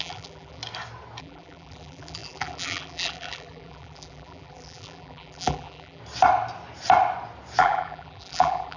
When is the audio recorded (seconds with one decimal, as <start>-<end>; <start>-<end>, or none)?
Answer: 0.6-1.2; 6.0-7.6